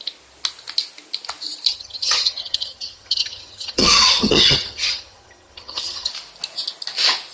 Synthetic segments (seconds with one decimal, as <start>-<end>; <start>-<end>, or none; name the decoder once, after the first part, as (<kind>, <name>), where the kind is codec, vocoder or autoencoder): 1.7-6.1 (vocoder, HiFi-GAN)